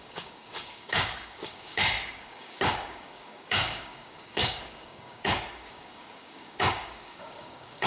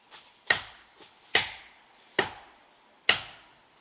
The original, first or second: second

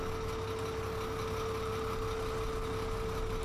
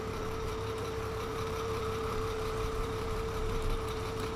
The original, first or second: first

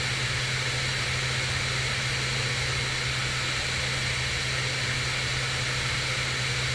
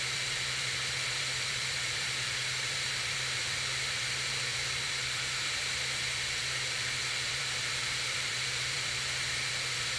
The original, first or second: first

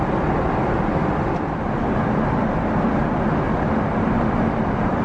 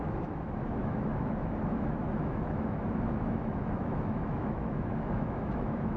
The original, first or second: first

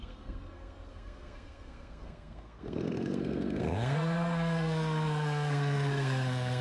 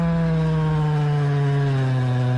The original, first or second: second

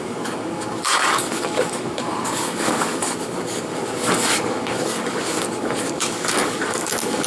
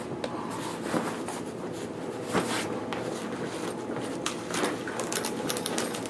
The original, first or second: second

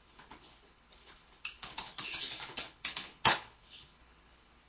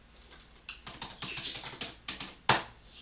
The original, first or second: second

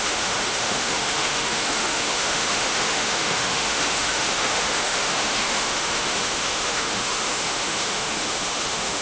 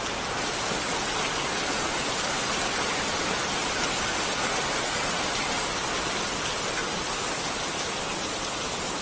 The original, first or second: second